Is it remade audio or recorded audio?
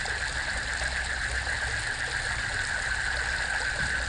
recorded